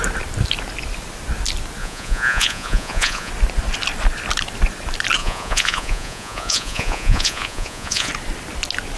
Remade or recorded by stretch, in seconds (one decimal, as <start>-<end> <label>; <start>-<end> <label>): 0.0-1.8 recorded; 1.8-3.3 remade; 3.3-5.2 recorded; 5.2-8.1 remade; 8.1-9.0 recorded

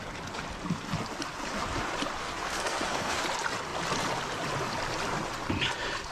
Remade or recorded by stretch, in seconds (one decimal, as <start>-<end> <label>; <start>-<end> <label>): 0.0-2.2 recorded; 2.2-3.2 remade; 3.2-6.1 recorded

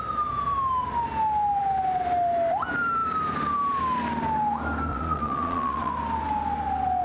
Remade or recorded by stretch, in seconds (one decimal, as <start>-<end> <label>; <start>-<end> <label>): 0.0-4.9 recorded; 4.9-5.9 remade; 5.9-7.0 recorded

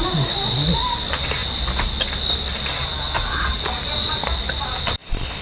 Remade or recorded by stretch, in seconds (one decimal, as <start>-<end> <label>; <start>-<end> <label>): 0.0-5.4 recorded

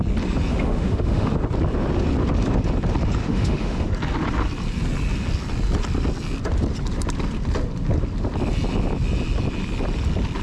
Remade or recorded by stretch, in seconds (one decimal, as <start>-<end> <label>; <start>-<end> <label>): 0.0-0.5 recorded; 0.5-1.3 remade; 1.3-3.2 recorded; 3.2-3.9 remade; 3.9-10.4 recorded

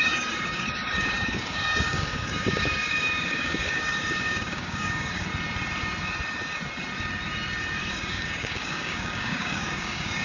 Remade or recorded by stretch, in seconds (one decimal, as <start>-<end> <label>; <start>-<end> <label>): 0.0-5.3 remade; 5.3-7.9 recorded; 7.9-10.2 remade

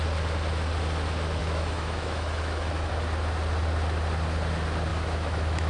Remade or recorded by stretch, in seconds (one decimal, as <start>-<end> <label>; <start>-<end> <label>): 0.0-1.4 recorded; 1.4-2.9 remade; 2.9-4.9 recorded; 4.9-5.7 remade

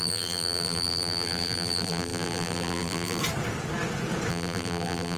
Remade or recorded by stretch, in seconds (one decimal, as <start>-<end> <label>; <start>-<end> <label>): 0.0-3.2 remade; 3.2-4.3 recorded; 4.3-5.2 remade